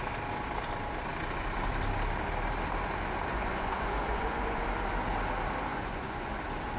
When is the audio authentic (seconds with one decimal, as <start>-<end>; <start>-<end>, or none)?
0.0-3.3; 4.6-5.7; 6.3-6.8